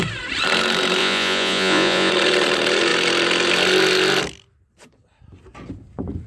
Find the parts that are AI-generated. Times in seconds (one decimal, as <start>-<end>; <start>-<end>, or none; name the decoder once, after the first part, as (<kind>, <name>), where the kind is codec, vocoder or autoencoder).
1.0-2.1 (vocoder, Vocos)